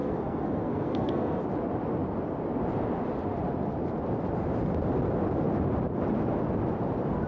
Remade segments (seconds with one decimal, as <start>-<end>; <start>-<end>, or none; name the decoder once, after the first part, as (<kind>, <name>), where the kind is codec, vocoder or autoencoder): 0.0-1.4 (codec, SNAC)